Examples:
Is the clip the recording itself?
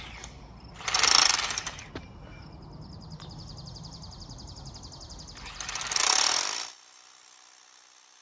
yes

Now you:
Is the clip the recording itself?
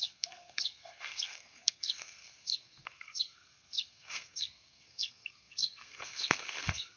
no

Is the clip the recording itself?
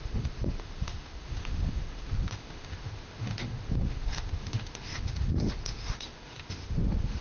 no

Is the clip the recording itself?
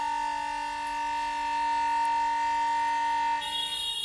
yes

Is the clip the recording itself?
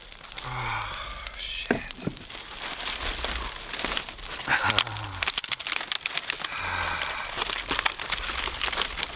yes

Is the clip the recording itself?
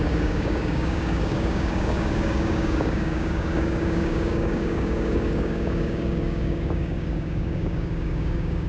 no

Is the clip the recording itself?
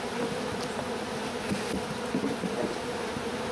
yes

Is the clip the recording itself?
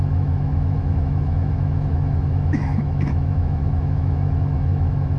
no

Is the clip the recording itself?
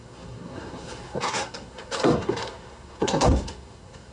no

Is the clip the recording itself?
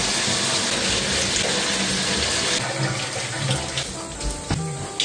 yes